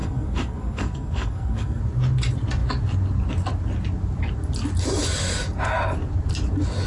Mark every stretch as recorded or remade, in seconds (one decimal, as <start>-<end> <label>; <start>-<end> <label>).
0.0-1.8 remade; 1.8-6.9 recorded